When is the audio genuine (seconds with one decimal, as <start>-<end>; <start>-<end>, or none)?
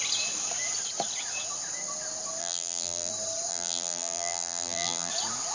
0.0-2.4; 3.1-3.5; 5.1-5.5